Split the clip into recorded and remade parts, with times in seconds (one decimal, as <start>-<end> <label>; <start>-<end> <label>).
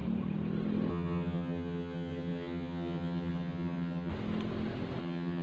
0.0-0.9 recorded; 0.9-4.1 remade; 4.1-5.0 recorded; 5.0-5.4 remade